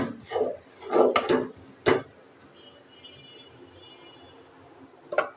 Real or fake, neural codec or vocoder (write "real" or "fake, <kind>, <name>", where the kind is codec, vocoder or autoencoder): real